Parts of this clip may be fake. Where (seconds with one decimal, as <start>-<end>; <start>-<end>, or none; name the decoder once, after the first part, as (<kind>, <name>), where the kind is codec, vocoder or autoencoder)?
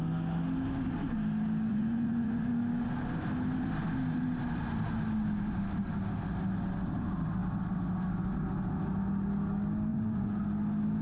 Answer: 1.7-2.5 (vocoder, Vocos); 9.9-10.4